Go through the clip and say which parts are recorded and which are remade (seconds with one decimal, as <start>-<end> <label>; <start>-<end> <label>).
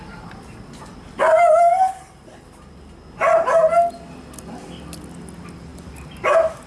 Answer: 0.0-6.7 recorded